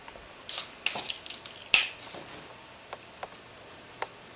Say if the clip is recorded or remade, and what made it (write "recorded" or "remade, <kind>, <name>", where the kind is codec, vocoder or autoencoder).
recorded